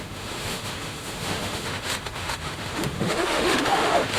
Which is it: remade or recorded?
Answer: remade